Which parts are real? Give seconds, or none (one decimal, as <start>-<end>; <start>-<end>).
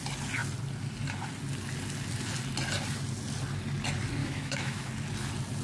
0.0-4.2; 4.9-5.6